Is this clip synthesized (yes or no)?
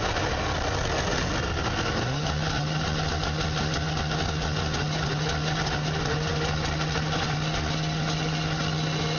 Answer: no